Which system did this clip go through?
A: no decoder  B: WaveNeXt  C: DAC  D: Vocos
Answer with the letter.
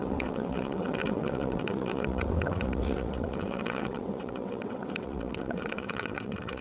B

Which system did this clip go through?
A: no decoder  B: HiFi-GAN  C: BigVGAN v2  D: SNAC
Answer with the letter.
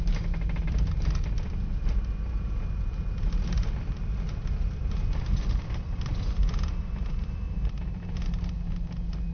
A